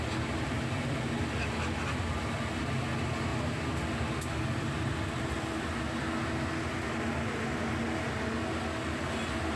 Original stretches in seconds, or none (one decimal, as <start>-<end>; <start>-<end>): 0.0-9.6